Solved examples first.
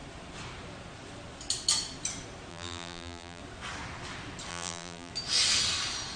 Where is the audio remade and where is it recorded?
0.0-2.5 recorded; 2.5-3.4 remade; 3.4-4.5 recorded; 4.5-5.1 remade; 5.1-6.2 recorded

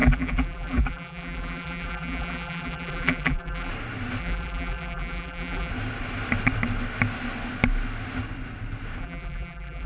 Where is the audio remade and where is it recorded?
0.0-3.7 remade; 3.7-4.2 recorded; 4.2-5.7 remade; 5.7-9.0 recorded; 9.0-9.9 remade

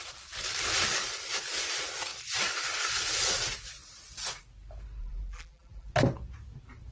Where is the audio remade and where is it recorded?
0.0-5.0 recorded; 5.0-5.9 remade; 5.9-6.9 recorded

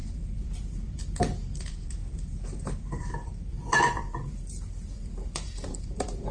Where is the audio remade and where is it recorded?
0.0-6.3 remade

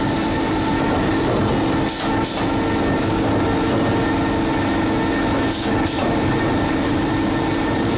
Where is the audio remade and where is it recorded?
0.0-1.5 remade; 1.5-5.7 recorded; 5.7-8.0 remade

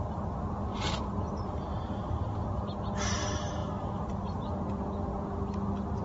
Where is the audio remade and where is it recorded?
0.0-0.7 recorded; 0.7-2.6 remade; 2.6-3.6 recorded; 3.6-4.4 remade; 4.4-6.0 recorded

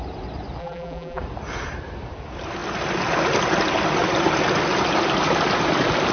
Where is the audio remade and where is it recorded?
0.0-0.6 recorded; 0.6-1.2 remade; 1.2-6.1 recorded